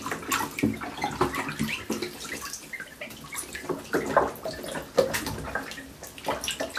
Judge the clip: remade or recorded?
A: recorded